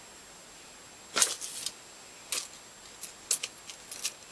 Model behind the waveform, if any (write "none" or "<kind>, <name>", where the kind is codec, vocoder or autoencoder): none